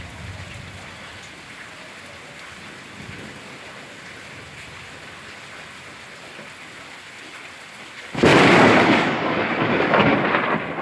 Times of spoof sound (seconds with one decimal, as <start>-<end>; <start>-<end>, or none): 8.3-10.0